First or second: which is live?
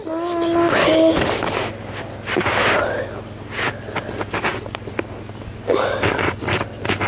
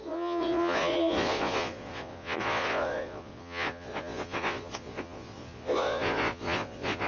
first